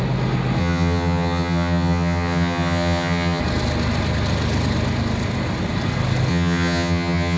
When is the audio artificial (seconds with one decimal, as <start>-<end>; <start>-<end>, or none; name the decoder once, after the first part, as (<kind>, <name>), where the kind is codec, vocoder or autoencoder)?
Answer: 0.6-3.4 (vocoder, HiFi-GAN); 6.3-7.4